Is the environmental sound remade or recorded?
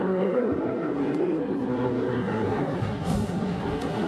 remade